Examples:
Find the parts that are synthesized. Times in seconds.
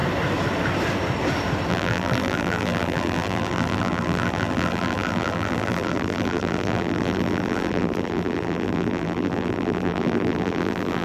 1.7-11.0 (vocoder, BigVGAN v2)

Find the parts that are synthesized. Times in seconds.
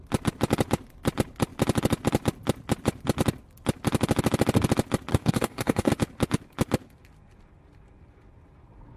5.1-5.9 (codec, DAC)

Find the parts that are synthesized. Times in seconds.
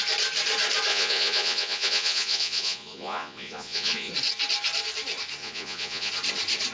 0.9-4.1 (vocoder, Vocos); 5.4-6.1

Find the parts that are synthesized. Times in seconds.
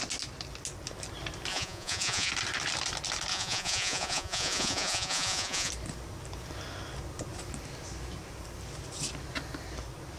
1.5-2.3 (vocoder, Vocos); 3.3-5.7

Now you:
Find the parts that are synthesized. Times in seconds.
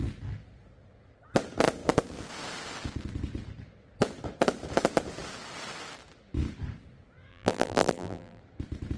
7.3-8.4 (vocoder, BigVGAN v2)